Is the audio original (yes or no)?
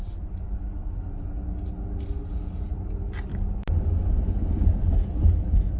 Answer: yes